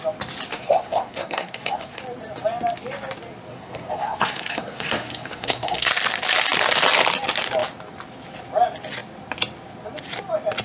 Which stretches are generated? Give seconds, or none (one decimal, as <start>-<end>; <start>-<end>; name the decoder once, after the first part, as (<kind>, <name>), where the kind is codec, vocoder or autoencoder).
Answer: 0.5-2.0 (codec, SNAC); 3.5-5.9